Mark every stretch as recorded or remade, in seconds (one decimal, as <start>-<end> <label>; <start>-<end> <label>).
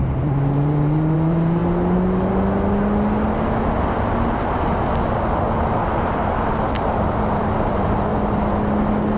0.0-1.6 remade; 1.6-5.7 recorded; 5.7-8.1 remade; 8.1-9.2 recorded